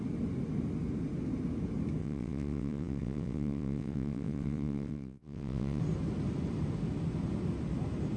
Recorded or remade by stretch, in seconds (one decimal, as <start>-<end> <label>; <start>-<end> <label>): 0.0-2.0 recorded; 2.0-5.8 remade; 5.8-8.2 recorded